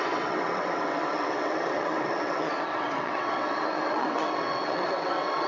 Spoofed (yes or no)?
yes